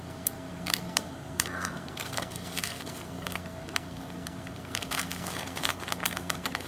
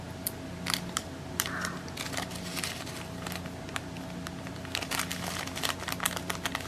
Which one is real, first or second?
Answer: second